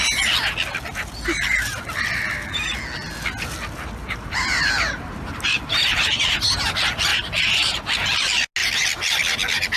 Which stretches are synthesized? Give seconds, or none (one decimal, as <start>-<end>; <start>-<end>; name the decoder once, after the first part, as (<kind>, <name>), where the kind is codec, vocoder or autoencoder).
4.0-6.2 (vocoder, BigVGAN v2); 7.1-7.8